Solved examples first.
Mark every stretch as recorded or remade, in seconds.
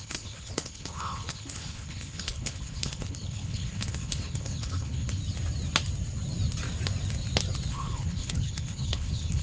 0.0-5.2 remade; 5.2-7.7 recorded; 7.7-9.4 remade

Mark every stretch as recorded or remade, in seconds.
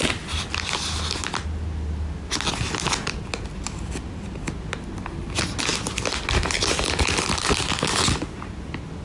0.0-9.0 recorded